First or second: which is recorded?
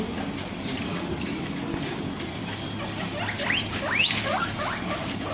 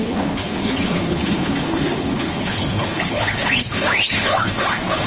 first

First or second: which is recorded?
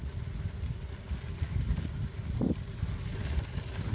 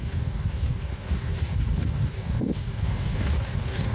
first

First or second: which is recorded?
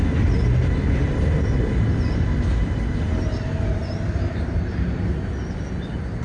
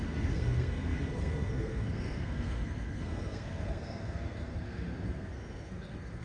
first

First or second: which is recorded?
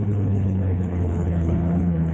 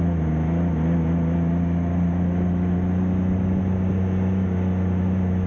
second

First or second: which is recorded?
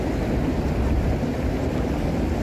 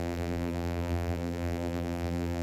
first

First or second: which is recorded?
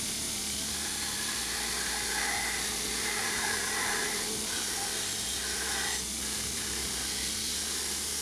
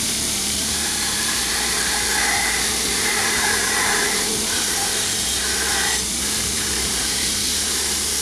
first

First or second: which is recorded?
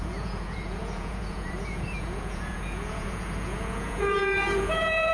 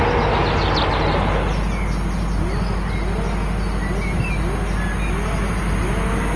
second